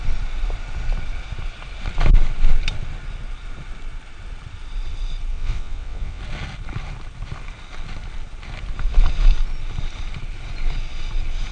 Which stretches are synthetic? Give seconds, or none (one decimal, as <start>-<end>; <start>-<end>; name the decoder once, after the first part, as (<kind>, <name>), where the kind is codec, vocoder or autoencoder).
5.3-6.2 (vocoder, WaveNeXt)